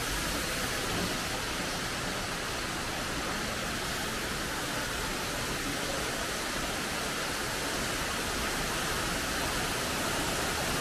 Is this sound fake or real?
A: real